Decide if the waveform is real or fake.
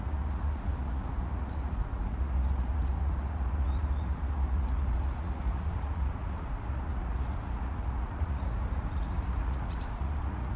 fake